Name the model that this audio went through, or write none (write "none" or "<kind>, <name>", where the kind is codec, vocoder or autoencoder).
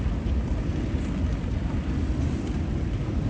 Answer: none